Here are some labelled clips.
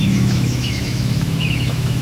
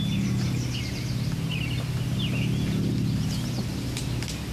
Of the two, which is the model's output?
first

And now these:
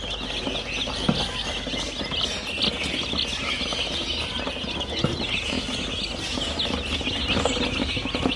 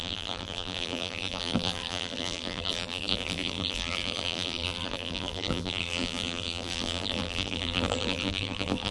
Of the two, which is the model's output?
second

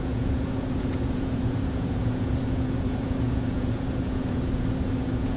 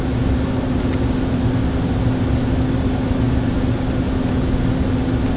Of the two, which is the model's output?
first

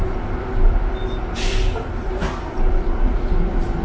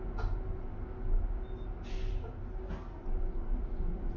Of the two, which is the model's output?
first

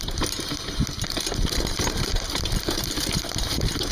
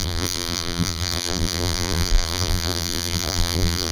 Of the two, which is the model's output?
second